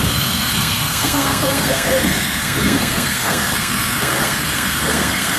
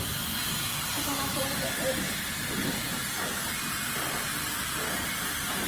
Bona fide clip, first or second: second